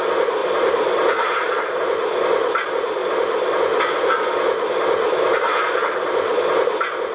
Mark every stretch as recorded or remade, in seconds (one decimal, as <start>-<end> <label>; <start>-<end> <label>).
0.0-7.1 recorded